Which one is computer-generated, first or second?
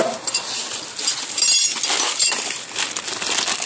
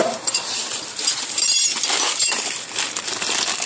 second